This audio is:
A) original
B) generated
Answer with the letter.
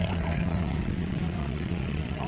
B